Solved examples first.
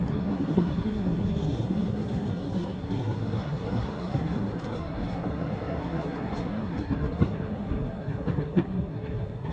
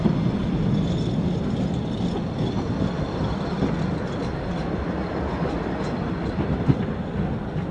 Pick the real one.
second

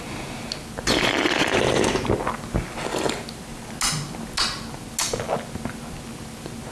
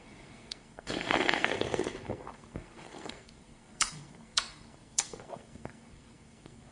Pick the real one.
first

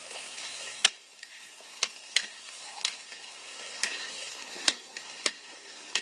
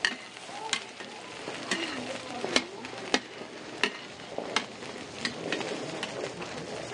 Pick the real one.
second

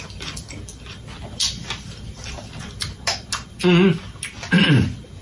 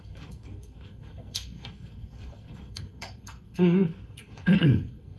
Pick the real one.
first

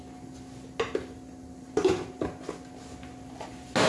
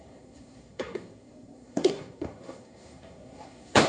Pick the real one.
first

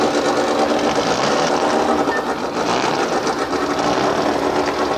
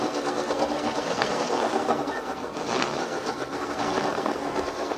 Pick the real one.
first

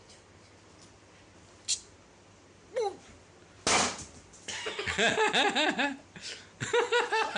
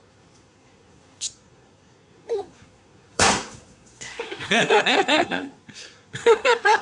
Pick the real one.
first